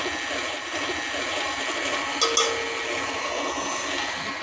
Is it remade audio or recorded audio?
recorded